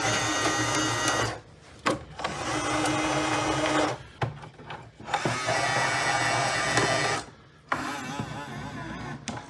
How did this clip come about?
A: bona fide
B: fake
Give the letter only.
A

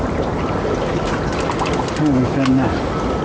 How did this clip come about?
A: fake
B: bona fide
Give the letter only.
B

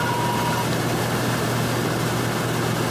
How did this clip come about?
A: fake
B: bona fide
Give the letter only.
B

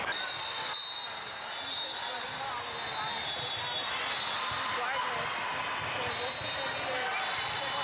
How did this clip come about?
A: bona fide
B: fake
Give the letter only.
A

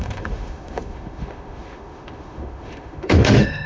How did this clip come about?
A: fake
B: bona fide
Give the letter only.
A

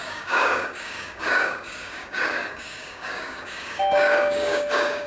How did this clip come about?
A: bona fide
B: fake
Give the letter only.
B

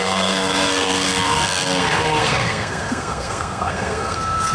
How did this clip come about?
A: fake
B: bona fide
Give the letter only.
A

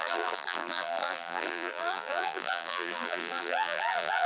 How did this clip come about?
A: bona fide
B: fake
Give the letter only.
B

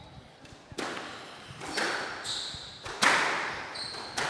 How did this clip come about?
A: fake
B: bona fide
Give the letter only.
B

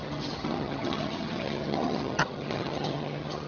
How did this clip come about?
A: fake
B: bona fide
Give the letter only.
A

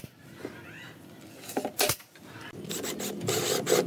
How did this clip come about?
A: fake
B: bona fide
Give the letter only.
B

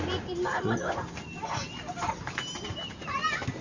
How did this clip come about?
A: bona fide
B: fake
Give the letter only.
A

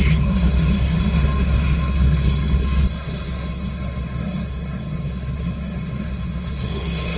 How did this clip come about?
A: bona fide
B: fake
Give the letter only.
B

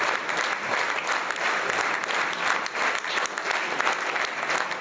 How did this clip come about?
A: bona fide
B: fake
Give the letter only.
A